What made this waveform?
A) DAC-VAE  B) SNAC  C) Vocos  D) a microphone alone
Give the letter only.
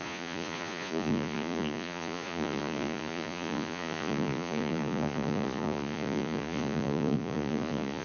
C